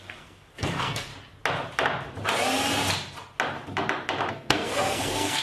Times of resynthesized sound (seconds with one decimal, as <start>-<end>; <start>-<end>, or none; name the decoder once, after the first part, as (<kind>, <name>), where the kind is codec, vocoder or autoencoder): 0.0-1.1 (codec, SNAC); 4.3-5.4